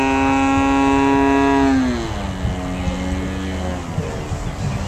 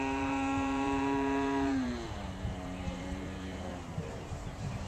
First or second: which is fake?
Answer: second